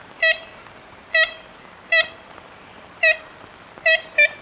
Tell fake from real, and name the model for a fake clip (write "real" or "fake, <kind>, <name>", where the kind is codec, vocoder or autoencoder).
real